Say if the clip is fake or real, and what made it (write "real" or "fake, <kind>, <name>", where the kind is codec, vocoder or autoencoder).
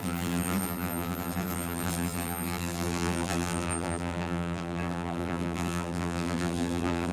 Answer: fake, vocoder, BigVGAN v2